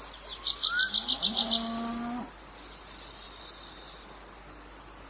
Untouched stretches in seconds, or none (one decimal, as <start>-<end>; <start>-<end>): 0.0-5.1